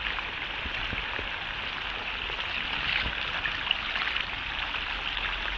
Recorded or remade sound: recorded